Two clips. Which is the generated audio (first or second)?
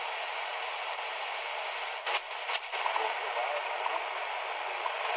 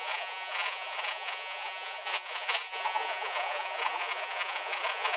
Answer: second